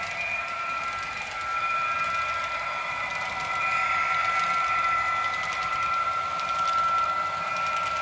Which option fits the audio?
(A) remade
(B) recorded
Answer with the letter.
B